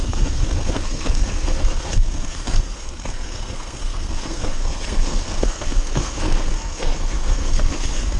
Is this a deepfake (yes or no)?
yes